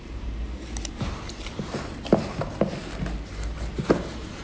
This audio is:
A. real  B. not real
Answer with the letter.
B